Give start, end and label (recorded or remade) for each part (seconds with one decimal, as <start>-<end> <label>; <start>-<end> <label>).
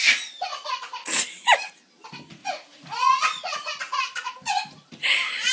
0.0-0.5 recorded; 0.5-1.7 remade; 1.7-2.4 recorded; 2.4-4.9 remade; 4.9-5.5 recorded